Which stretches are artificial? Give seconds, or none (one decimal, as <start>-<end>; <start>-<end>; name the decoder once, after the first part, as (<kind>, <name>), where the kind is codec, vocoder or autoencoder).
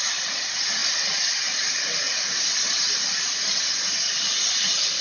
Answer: none